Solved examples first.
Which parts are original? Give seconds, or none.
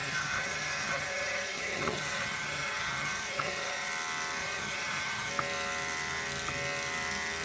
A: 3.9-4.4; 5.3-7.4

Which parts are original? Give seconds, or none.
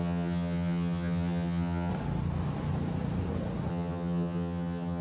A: 1.9-3.7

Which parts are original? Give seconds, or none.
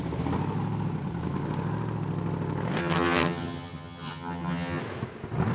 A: 0.0-2.8; 4.8-5.5